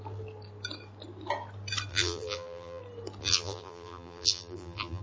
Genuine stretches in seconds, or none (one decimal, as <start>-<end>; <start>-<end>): 0.0-1.9; 2.8-3.2